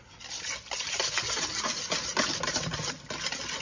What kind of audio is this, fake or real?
real